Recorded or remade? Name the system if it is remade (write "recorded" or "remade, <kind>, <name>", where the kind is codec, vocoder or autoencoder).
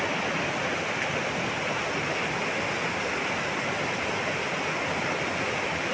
recorded